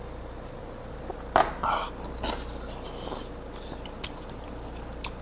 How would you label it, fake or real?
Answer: real